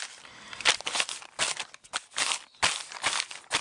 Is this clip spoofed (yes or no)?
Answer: no